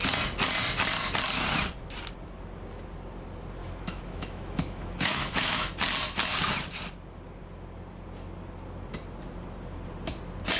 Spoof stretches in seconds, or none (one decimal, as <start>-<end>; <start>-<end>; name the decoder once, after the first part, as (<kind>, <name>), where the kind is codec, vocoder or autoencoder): 3.6-5.7 (autoencoder, DAC-VAE)